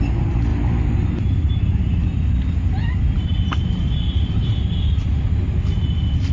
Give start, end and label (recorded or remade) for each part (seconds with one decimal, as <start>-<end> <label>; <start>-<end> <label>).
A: 0.0-6.3 recorded